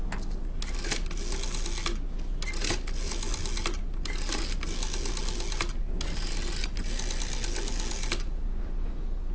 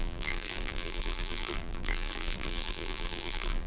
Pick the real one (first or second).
first